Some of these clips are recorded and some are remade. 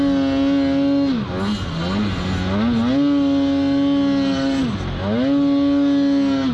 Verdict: recorded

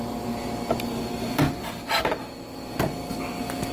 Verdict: recorded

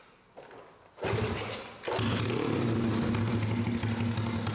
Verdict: recorded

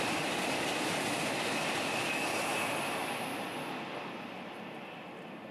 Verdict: recorded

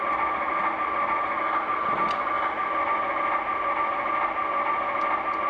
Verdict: recorded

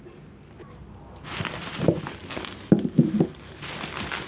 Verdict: recorded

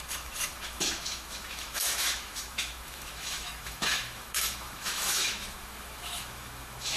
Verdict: remade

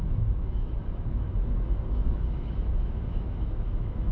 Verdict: remade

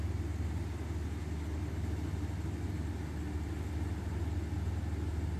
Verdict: recorded